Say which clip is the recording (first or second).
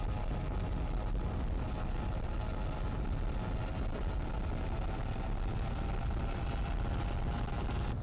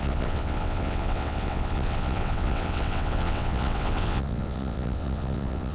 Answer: first